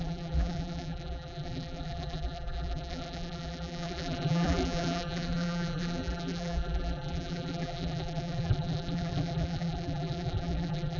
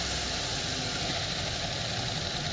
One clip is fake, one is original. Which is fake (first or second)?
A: first